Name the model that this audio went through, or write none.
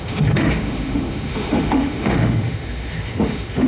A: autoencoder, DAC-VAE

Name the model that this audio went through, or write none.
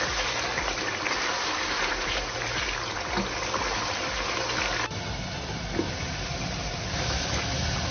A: none